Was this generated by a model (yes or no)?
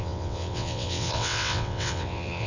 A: yes